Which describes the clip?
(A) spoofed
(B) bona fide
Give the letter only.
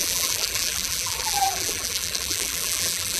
A